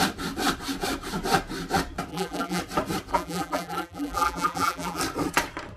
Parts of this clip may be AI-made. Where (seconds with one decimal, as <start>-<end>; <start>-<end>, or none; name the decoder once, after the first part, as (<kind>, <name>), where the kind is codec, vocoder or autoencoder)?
2.1-2.6 (vocoder, BigVGAN v2); 3.1-5.0